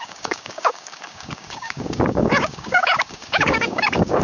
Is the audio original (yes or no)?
no